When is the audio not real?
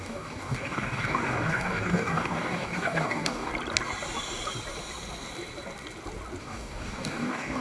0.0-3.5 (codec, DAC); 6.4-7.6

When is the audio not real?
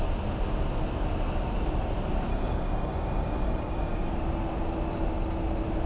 2.3-4.1 (codec, DAC)